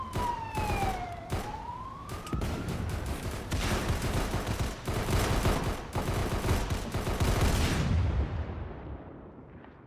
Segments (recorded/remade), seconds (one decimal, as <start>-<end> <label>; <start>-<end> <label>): 0.0-2.3 recorded; 2.3-5.3 remade; 5.3-9.9 recorded